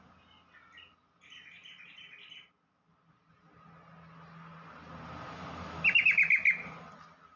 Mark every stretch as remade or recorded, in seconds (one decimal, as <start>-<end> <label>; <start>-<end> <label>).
0.0-7.4 recorded

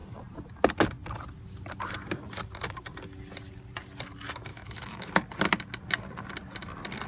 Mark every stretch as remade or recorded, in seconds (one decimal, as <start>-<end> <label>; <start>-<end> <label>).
0.0-4.5 recorded; 4.5-5.1 remade; 5.1-7.1 recorded

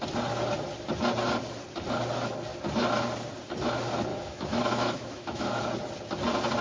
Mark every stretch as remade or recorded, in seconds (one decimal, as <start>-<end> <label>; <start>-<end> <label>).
0.0-4.1 recorded; 4.1-5.6 remade; 5.6-6.6 recorded